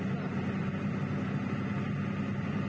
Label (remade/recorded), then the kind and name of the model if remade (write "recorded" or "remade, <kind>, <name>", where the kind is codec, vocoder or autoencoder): recorded